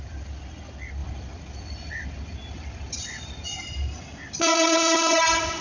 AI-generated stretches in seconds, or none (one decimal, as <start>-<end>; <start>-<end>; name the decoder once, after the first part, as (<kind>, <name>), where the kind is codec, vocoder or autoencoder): none